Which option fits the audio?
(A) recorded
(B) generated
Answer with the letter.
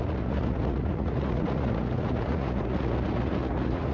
B